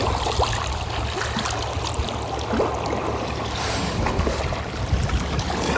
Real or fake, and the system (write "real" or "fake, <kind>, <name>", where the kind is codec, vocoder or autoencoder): real